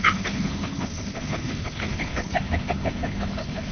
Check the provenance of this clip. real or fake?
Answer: fake